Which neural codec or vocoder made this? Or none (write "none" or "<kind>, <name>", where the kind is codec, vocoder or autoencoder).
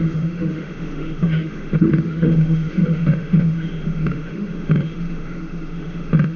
autoencoder, DAC-VAE